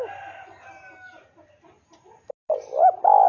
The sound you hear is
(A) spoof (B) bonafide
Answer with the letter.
B